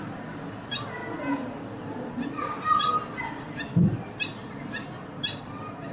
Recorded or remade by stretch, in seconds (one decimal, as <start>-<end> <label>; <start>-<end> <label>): 0.0-5.9 remade